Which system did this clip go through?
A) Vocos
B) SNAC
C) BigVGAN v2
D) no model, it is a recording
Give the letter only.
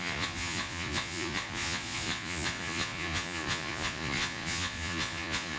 A